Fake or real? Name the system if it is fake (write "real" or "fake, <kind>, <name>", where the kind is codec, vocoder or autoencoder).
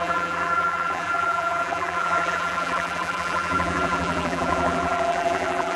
fake, vocoder, BigVGAN v2